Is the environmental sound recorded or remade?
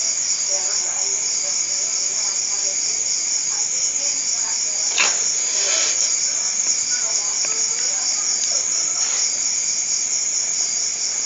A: recorded